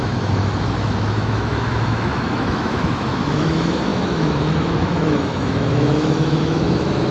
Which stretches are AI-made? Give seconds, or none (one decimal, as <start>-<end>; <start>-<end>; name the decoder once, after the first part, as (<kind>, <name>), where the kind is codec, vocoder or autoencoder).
0.0-7.1 (autoencoder, DAC-VAE)

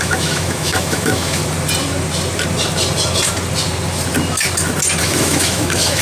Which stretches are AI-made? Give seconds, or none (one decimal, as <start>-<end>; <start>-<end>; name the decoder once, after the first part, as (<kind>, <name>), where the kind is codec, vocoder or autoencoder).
0.0-1.4 (autoencoder, DAC-VAE); 5.0-6.0